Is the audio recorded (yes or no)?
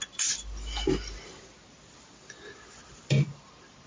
yes